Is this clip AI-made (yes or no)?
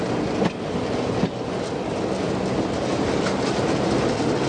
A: no